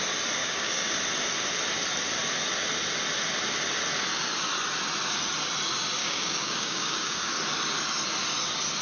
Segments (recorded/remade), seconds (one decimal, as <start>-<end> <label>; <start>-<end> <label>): 0.0-0.4 recorded; 0.4-1.0 remade; 1.0-6.0 recorded; 6.0-7.3 remade; 7.3-8.8 recorded